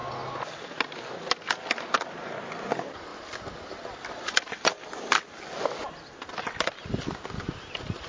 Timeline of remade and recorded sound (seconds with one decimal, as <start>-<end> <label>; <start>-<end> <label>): 0.0-8.1 recorded